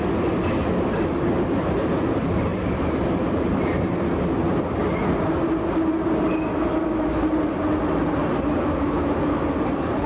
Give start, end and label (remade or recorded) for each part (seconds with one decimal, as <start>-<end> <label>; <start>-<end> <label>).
0.0-2.5 recorded; 2.5-4.1 remade; 4.1-10.1 recorded